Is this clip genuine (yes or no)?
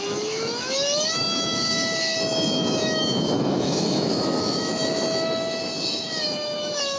no